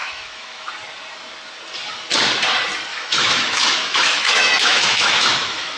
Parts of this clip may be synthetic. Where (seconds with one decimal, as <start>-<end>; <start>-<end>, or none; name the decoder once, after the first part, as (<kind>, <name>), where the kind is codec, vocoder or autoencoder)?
0.0-0.7 (autoencoder, DAC-VAE); 2.9-5.8

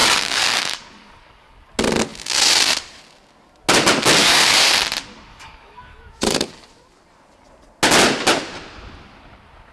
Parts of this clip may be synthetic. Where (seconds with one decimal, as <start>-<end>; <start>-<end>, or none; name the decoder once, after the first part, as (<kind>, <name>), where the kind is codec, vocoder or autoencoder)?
0.0-1.7 (codec, DAC); 4.2-4.7; 5.3-6.5